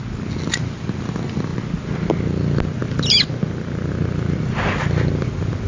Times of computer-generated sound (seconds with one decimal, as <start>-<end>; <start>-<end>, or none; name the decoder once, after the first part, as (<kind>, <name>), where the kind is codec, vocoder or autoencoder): none